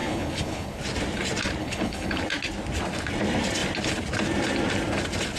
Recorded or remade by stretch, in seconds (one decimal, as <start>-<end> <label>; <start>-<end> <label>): 0.0-0.8 remade; 0.8-1.6 recorded; 1.6-2.2 remade; 2.2-5.4 recorded